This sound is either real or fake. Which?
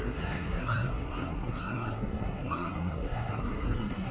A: fake